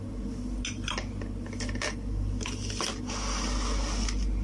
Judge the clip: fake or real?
real